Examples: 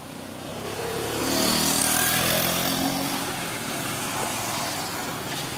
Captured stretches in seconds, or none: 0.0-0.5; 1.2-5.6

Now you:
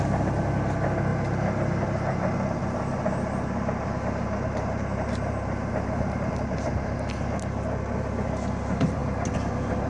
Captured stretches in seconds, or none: 0.0-2.6; 6.3-9.9

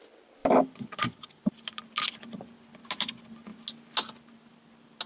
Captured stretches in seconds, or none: 0.0-0.4; 1.8-5.1

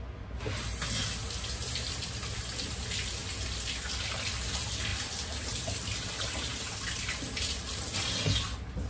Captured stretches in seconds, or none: 0.0-1.2; 2.4-3.2; 4.5-4.9; 7.1-8.9

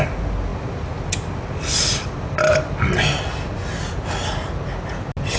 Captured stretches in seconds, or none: 0.0-0.5; 3.7-5.4

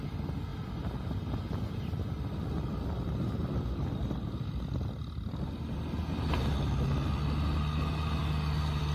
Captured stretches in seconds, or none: 0.0-8.9